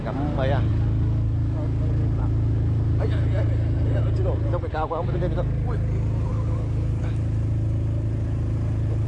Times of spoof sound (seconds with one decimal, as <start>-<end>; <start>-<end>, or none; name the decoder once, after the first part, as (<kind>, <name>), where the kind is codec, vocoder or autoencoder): 6.3-7.0 (codec, DAC)